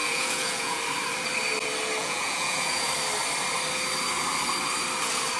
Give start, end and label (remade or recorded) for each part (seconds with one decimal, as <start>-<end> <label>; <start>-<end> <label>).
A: 0.0-0.8 remade; 0.8-2.0 recorded; 2.0-2.9 remade; 2.9-5.4 recorded